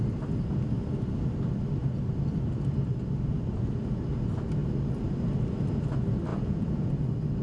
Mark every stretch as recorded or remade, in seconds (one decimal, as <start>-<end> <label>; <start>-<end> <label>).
0.0-6.3 recorded; 6.3-6.9 remade; 6.9-7.4 recorded